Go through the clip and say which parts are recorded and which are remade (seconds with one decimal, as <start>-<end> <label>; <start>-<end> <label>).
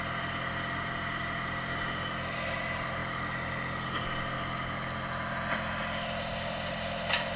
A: 0.0-7.4 recorded